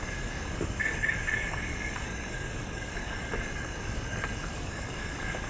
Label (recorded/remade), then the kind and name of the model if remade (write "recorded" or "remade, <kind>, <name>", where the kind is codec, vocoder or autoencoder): remade, codec, DAC